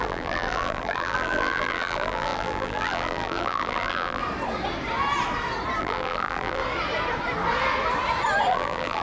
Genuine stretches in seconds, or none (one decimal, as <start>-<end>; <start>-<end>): 4.2-5.8; 6.6-8.5